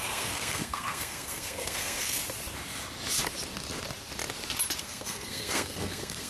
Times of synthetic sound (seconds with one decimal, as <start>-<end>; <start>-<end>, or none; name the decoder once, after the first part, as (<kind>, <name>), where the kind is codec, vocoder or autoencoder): 0.0-2.2 (codec, SNAC); 4.8-6.3